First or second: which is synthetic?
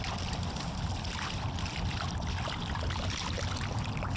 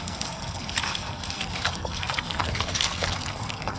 second